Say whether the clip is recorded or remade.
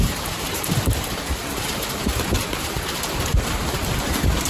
remade